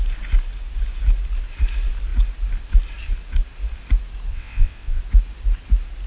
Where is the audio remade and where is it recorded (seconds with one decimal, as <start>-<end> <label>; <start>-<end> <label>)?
0.0-4.3 recorded; 4.3-5.0 remade; 5.0-6.1 recorded